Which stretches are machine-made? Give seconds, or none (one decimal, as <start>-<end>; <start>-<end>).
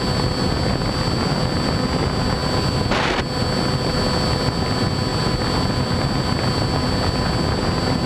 none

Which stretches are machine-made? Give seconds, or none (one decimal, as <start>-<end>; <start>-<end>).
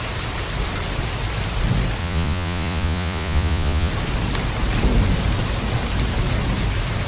2.0-3.9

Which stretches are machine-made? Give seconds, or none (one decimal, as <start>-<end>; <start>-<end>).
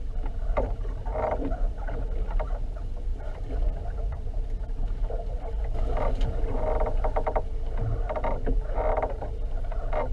none